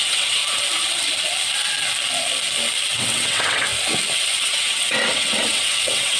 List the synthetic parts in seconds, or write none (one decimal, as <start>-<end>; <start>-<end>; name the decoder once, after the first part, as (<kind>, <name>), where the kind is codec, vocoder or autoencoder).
0.0-0.4 (vocoder, WaveNeXt); 3.0-3.7; 4.4-6.2